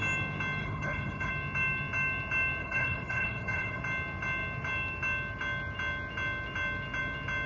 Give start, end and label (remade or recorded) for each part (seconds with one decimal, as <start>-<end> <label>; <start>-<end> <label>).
0.0-0.6 recorded; 0.6-1.3 remade; 1.3-2.6 recorded; 2.6-3.8 remade; 3.8-7.5 recorded